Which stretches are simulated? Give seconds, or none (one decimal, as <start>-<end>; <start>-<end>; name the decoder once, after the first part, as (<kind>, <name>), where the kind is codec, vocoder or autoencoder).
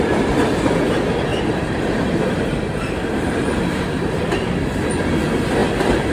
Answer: 1.3-4.5 (vocoder, BigVGAN v2)